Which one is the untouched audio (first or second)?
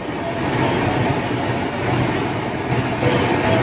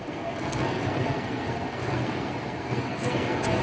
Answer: first